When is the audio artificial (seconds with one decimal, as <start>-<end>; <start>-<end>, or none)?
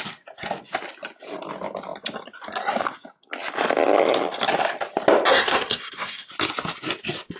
5.3-6.3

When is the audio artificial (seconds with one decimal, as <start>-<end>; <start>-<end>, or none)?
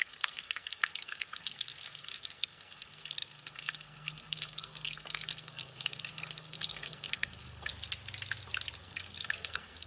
0.0-7.7; 8.8-9.9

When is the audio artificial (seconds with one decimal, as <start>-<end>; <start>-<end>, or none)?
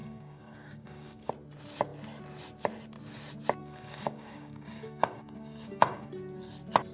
0.0-1.3; 3.6-6.1